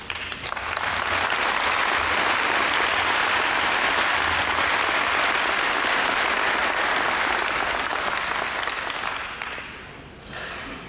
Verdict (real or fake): real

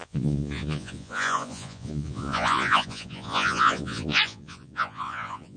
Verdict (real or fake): fake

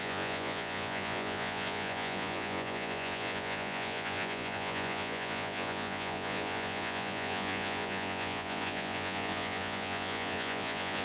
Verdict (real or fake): fake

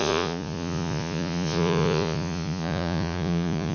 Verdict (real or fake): fake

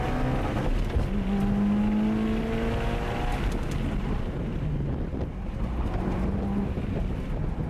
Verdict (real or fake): real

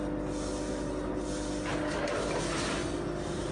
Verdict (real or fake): real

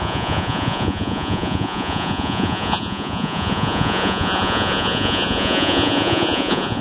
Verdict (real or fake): fake